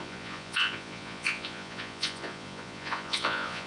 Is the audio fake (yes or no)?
yes